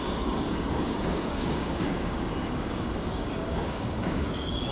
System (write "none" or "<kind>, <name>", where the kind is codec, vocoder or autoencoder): codec, DAC